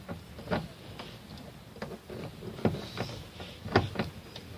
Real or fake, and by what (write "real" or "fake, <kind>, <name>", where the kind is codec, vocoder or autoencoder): real